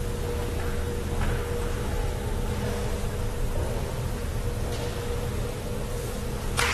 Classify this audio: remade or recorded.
recorded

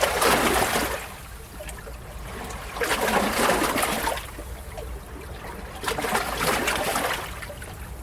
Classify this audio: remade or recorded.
recorded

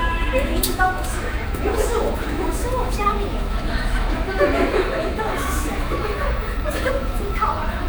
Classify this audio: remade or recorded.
remade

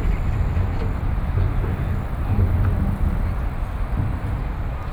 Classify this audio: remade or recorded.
recorded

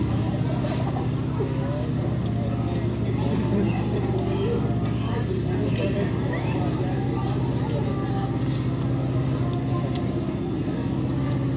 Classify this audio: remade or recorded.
recorded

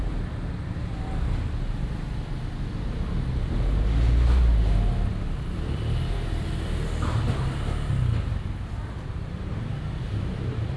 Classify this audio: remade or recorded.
recorded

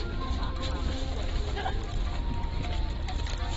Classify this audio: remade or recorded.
remade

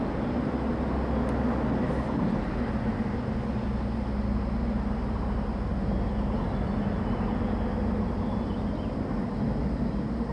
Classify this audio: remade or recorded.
recorded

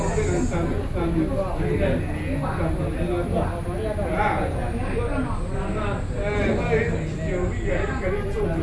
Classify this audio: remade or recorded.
recorded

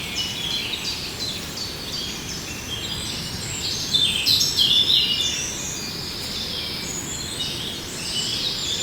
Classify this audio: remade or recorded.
recorded